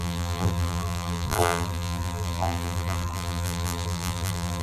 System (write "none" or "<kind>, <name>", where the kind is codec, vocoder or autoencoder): vocoder, BigVGAN v2